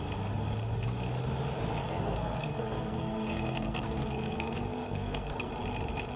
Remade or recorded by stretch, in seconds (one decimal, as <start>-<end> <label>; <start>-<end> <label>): 0.0-1.8 recorded; 1.8-5.5 remade; 5.5-6.2 recorded